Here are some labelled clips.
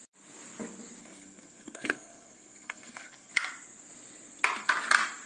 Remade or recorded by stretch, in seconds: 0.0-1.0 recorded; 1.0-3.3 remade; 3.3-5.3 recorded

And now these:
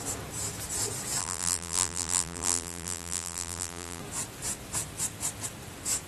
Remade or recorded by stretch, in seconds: 0.0-1.2 recorded; 1.2-4.0 remade; 4.0-6.1 recorded

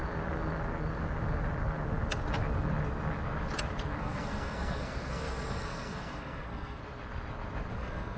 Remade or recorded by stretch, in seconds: 0.0-4.0 recorded; 4.0-6.8 remade; 6.8-7.7 recorded; 7.7-8.2 remade

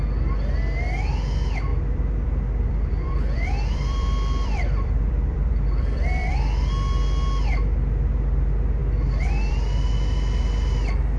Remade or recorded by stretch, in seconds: 0.0-1.7 recorded; 1.7-6.3 remade; 6.3-11.2 recorded

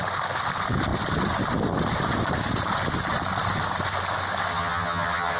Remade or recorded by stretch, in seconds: 0.0-4.5 recorded; 4.5-5.4 remade

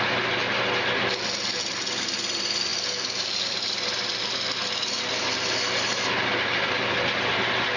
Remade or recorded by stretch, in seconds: 0.0-2.7 recorded; 2.7-6.7 remade; 6.7-7.8 recorded